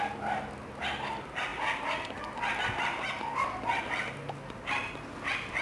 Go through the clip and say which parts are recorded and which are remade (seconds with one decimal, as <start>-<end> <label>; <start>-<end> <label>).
0.0-5.6 recorded